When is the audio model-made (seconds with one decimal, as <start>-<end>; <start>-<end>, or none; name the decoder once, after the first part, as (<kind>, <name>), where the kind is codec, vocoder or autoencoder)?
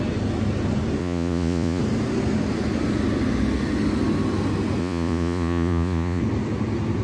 1.0-1.8 (vocoder, Vocos); 4.8-6.2